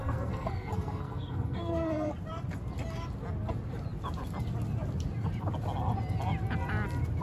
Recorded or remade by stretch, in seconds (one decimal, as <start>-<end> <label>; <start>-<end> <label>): 0.0-2.1 remade; 2.1-7.2 recorded